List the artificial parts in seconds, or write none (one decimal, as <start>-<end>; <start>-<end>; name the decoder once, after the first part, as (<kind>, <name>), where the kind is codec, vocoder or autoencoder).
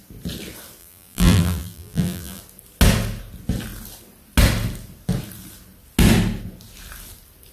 0.8-2.4 (vocoder, BigVGAN v2)